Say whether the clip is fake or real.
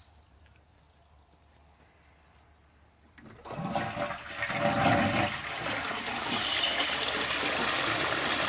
real